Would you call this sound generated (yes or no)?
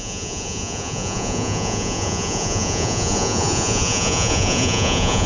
yes